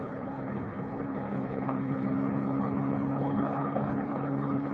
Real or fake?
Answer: fake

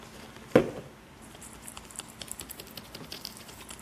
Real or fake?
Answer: real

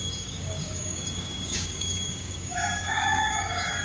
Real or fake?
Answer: fake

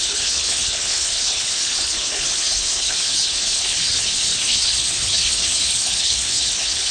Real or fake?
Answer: fake